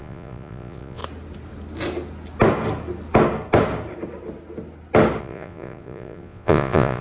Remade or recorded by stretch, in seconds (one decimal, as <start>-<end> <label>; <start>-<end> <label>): 0.0-1.0 remade; 1.0-5.2 recorded; 5.2-7.0 remade